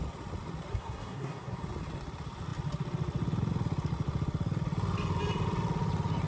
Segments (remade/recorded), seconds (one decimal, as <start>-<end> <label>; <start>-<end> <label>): 0.0-0.7 recorded; 0.7-1.6 remade; 1.6-6.3 recorded